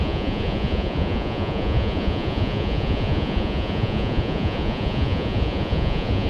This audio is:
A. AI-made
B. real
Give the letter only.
A